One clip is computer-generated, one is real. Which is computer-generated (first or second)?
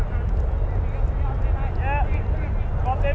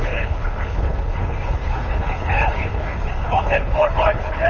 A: second